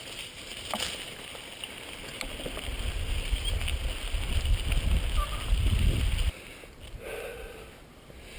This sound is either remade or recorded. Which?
recorded